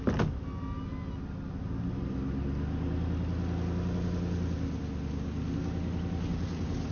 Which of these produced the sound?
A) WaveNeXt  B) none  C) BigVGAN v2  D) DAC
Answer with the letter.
B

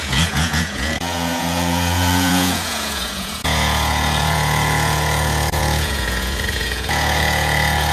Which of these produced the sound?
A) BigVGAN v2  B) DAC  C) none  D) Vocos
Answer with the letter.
D